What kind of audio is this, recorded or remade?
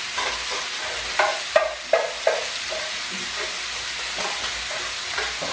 recorded